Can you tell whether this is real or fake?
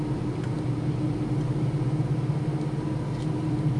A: real